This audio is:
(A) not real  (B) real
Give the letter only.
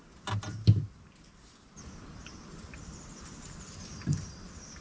B